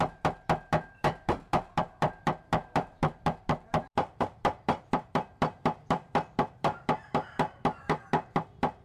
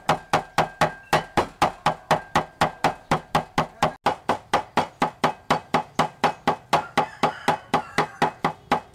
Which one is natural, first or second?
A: second